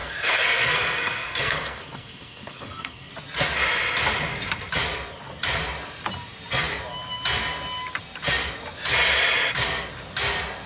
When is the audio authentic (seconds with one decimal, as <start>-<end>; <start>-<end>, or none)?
3.1-10.7

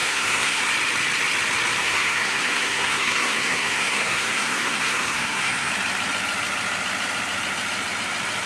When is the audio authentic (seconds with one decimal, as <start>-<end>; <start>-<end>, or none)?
0.6-1.8; 5.7-8.5

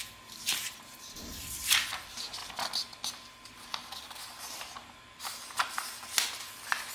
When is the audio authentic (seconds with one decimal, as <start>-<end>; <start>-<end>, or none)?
0.0-6.9

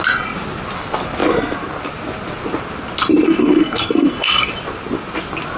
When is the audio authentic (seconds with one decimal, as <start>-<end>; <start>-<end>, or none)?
0.0-3.4; 4.5-5.6